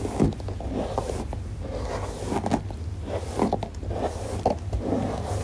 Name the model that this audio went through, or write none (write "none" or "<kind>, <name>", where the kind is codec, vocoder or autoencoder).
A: none